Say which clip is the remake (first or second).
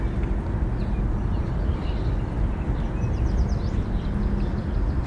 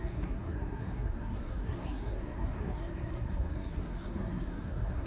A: second